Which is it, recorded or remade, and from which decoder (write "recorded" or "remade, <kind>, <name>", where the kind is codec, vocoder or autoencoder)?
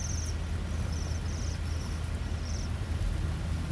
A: recorded